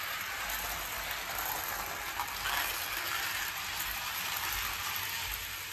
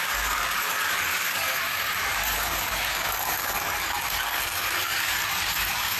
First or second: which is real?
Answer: first